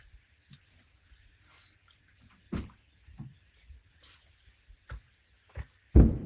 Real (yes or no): yes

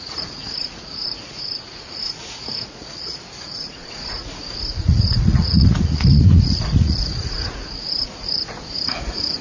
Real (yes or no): no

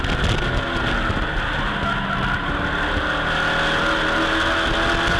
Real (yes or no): yes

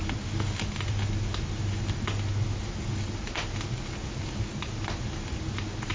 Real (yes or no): yes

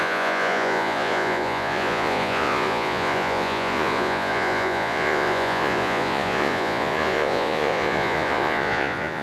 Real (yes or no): no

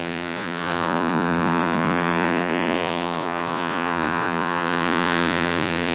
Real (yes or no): no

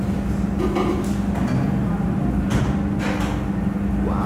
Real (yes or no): yes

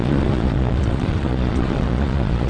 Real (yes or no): no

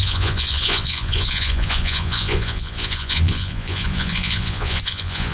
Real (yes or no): no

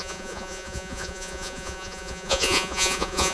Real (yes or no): no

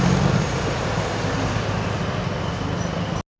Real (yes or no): yes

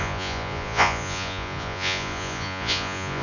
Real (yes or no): no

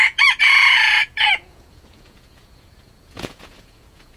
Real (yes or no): no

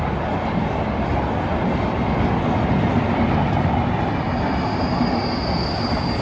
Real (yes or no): yes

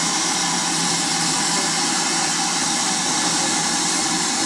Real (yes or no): yes